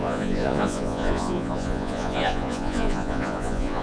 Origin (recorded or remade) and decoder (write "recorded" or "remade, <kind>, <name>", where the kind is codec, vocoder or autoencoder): remade, vocoder, Vocos